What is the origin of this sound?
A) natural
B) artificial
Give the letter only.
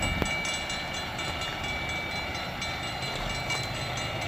A